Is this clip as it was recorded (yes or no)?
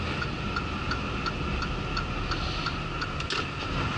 yes